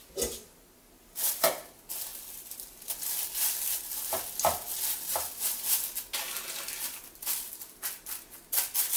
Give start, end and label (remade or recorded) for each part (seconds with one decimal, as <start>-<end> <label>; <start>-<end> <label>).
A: 0.0-9.0 recorded